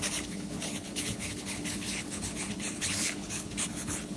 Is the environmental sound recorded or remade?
remade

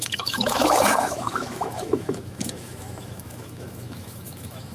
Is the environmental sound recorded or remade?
remade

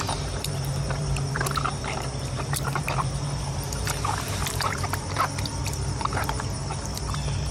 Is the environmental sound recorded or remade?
remade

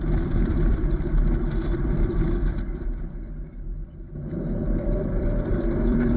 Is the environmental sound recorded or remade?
remade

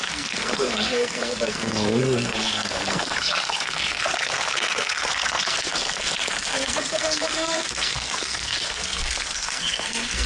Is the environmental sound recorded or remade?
remade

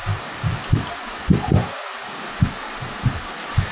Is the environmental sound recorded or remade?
recorded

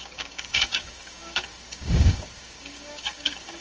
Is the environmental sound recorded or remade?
remade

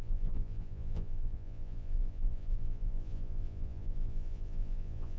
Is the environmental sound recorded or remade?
remade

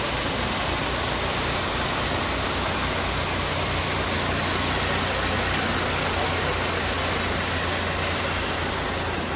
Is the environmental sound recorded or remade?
recorded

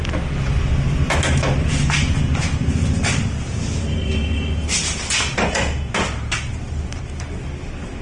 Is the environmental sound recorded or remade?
recorded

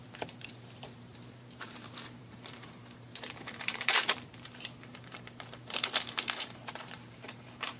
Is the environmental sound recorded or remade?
remade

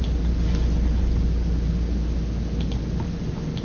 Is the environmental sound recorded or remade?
recorded